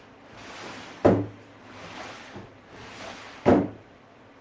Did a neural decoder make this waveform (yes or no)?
no